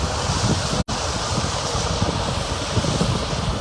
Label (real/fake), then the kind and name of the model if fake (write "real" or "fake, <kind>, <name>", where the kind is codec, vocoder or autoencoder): real